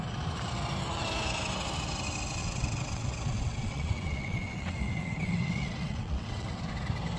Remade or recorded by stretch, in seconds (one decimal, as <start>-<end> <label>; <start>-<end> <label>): 0.0-2.4 recorded; 2.4-6.7 remade; 6.7-7.2 recorded